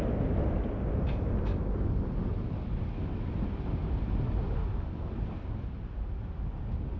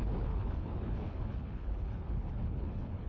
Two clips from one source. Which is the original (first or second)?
first